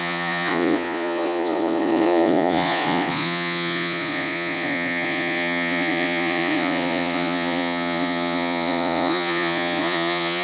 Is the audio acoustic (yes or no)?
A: no